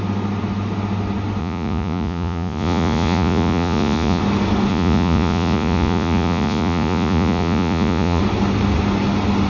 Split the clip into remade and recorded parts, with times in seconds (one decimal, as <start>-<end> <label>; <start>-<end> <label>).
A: 0.0-1.4 recorded; 1.4-4.2 remade; 4.2-4.7 recorded; 4.7-8.2 remade; 8.2-9.5 recorded